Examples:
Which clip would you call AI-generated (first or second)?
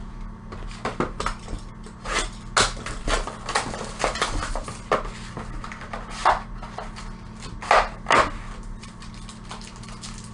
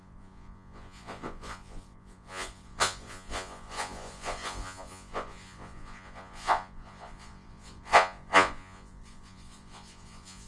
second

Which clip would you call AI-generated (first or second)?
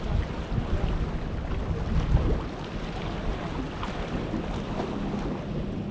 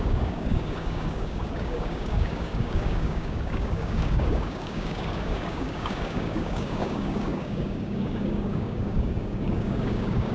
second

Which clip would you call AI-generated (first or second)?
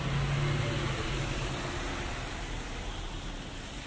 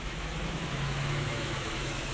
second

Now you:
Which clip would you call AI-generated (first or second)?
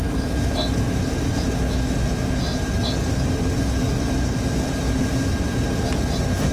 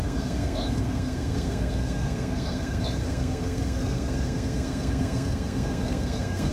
second